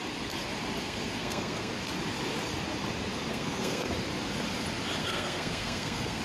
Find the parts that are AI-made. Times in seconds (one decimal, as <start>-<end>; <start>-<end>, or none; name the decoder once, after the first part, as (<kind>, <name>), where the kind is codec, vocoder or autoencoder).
0.8-1.7 (codec, SNAC); 3.3-3.8; 5.0-6.2